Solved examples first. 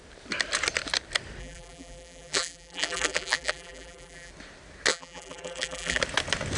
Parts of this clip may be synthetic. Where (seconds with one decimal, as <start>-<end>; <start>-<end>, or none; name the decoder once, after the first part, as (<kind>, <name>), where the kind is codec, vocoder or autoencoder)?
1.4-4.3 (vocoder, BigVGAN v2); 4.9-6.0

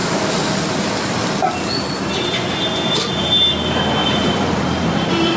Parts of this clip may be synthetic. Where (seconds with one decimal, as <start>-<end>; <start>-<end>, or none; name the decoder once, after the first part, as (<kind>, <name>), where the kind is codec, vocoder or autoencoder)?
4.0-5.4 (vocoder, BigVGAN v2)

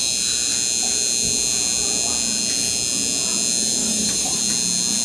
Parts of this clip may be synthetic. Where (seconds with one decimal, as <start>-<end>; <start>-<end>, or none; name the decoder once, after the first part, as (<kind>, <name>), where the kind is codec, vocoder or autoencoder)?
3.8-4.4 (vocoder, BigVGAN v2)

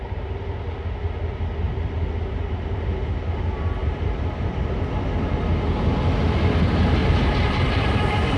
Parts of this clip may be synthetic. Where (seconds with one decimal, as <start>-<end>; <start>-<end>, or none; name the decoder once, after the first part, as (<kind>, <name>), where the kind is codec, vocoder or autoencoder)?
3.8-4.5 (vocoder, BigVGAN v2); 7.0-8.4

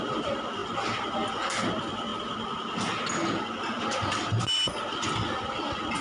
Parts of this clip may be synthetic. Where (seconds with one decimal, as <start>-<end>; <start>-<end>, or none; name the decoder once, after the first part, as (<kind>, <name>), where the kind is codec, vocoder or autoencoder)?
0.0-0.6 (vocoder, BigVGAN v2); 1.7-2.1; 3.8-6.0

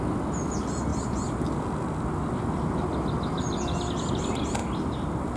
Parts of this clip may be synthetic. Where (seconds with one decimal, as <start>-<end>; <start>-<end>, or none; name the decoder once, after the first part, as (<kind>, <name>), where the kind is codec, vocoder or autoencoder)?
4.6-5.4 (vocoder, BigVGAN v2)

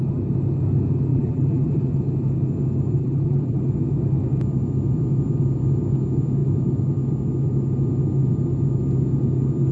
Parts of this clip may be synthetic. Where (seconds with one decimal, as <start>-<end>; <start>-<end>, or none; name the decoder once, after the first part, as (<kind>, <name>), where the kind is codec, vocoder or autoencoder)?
1.1-1.7 (vocoder, BigVGAN v2); 3.0-3.6

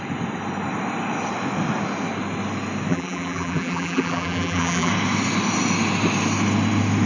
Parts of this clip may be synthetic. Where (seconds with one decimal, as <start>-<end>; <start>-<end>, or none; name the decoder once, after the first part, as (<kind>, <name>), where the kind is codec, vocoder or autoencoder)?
2.9-4.9 (vocoder, BigVGAN v2)